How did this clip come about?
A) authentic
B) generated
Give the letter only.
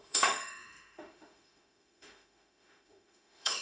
B